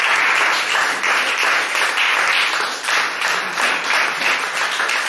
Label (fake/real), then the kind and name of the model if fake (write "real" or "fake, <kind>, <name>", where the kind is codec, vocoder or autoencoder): real